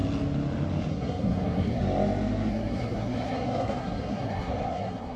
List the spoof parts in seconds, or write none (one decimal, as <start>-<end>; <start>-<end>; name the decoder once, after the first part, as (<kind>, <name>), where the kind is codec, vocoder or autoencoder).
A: 0.9-1.8 (codec, SNAC); 2.5-5.2